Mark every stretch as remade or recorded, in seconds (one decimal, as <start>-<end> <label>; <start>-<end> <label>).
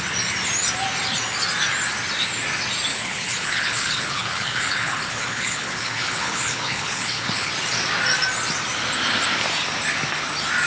0.0-2.9 recorded; 2.9-7.5 remade; 7.5-10.7 recorded